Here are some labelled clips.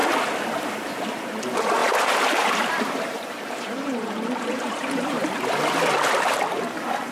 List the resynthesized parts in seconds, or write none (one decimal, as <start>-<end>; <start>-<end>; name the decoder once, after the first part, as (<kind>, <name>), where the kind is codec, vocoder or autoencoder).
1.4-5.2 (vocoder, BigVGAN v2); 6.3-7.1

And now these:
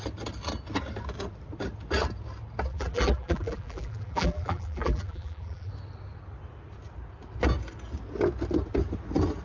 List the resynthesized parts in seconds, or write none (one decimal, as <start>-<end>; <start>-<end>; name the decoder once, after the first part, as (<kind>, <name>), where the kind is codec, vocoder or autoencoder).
2.7-5.7 (vocoder, BigVGAN v2)

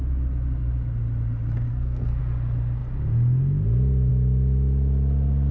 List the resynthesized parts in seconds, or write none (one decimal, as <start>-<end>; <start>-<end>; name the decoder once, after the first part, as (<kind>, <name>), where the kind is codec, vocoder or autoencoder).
1.7-2.2 (codec, SNAC)